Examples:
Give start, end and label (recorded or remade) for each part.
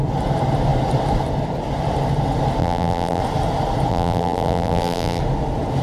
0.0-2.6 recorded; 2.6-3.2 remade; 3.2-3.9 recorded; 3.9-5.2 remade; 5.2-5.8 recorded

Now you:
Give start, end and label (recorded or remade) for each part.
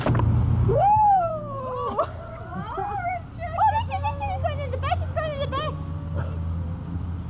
0.0-0.6 recorded; 0.6-1.6 remade; 1.6-7.3 recorded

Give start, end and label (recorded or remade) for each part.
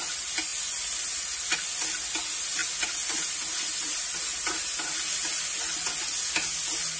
0.0-7.0 recorded